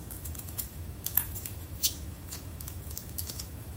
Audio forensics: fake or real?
fake